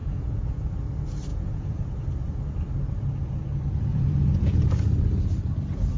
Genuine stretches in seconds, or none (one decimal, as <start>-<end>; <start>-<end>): 0.7-1.3; 1.8-3.9; 4.6-6.0